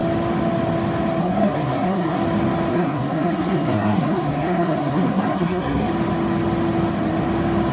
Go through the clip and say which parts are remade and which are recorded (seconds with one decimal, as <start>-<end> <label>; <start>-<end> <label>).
0.0-1.2 recorded; 1.2-2.2 remade; 2.2-2.7 recorded; 2.7-5.9 remade; 5.9-7.7 recorded